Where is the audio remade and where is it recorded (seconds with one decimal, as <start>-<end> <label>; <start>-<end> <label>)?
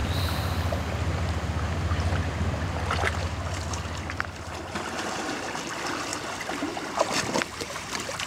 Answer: 0.0-8.3 recorded